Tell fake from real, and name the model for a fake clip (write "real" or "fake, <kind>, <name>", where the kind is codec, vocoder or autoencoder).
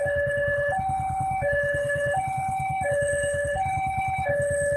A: fake, codec, HILCodec